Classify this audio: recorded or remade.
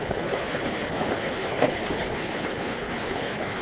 remade